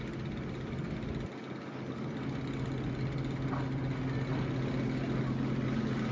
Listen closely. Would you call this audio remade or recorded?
recorded